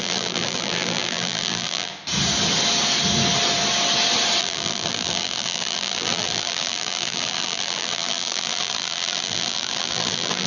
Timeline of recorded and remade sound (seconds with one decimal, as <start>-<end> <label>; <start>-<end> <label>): 0.0-1.9 remade; 1.9-4.4 recorded; 4.4-10.5 remade